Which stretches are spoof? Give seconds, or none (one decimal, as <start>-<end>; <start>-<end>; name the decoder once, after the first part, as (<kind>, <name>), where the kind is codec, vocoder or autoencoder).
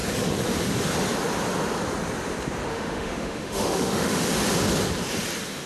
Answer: 2.7-4.2 (autoencoder, DAC-VAE)